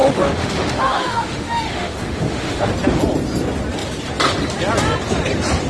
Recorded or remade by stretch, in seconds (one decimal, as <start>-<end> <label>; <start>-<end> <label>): 0.0-2.7 remade; 2.7-5.7 recorded